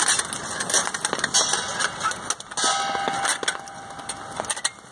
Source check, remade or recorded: recorded